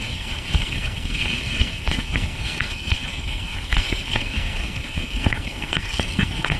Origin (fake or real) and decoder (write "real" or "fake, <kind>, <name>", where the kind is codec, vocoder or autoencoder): fake, codec, SNAC